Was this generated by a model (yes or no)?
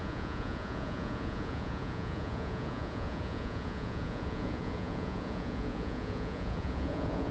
yes